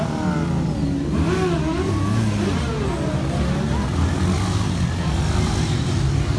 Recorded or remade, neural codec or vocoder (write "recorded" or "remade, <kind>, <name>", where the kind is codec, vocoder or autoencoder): recorded